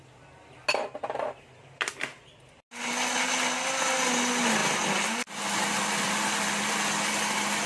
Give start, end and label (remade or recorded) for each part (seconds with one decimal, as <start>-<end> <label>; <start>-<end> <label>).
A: 0.0-7.7 recorded

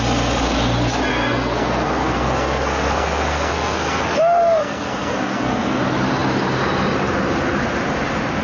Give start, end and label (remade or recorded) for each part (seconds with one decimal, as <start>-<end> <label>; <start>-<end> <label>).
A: 0.0-1.1 recorded; 1.1-5.8 remade; 5.8-8.4 recorded

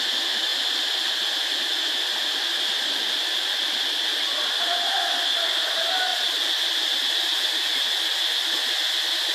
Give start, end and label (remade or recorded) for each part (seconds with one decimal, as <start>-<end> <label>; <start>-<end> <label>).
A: 0.0-9.3 recorded

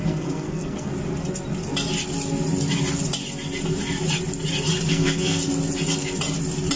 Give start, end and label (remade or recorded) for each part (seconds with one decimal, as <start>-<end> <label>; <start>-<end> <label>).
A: 0.0-0.9 remade; 0.9-4.9 recorded; 4.9-5.4 remade; 5.4-6.8 recorded

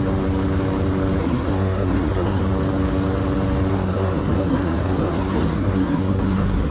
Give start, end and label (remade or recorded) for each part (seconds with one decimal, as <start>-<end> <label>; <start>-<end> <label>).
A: 0.0-1.2 recorded; 1.2-2.4 remade; 2.4-3.7 recorded; 3.7-6.7 remade